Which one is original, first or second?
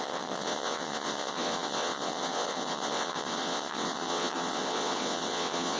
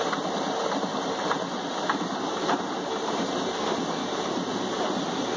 second